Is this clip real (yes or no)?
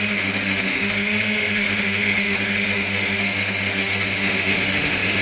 no